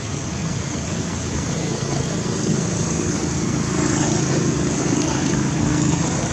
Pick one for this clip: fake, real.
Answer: fake